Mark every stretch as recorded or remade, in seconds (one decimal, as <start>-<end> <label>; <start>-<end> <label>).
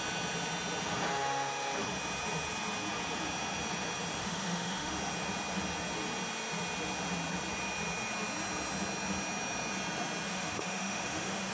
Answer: 0.0-4.2 recorded; 4.2-4.9 remade; 4.9-10.3 recorded; 10.3-11.5 remade